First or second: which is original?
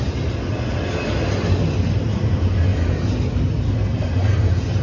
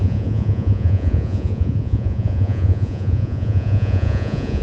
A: first